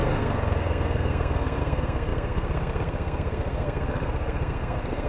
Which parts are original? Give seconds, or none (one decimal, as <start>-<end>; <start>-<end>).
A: none